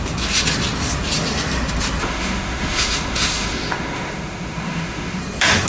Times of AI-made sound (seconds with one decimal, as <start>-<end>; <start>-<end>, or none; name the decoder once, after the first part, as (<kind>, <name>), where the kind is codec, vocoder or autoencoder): 2.0-5.2 (autoencoder, DAC-VAE)